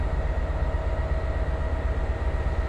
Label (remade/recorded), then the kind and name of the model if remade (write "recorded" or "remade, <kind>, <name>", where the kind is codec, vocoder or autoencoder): recorded